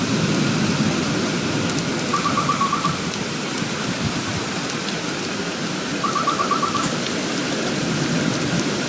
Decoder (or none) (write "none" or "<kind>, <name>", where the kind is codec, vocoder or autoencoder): none